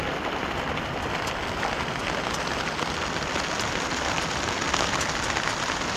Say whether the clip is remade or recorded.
recorded